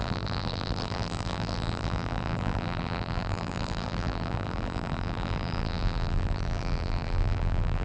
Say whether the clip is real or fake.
fake